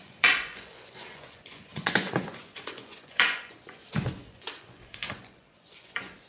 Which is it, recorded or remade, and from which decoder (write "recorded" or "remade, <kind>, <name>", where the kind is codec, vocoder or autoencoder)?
remade, vocoder, Vocos